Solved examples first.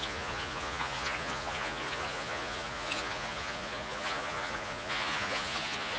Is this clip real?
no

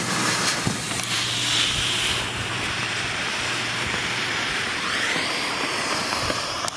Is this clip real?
no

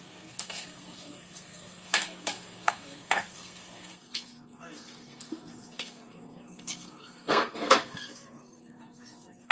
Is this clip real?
no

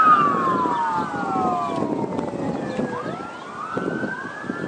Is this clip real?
yes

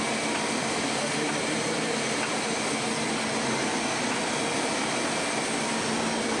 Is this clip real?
yes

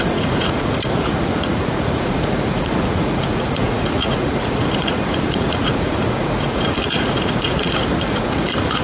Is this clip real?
no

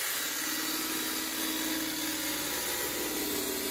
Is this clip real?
yes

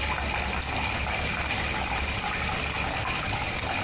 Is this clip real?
yes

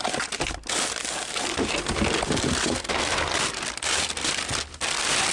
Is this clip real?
yes